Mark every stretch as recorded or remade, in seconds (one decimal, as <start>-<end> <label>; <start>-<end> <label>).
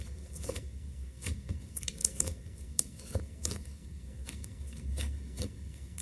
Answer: 0.0-6.0 remade